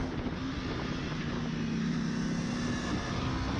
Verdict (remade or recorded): recorded